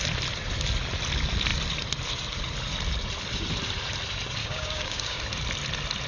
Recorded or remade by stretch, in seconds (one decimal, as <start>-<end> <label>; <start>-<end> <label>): 0.0-4.4 recorded; 4.4-5.2 remade; 5.2-6.1 recorded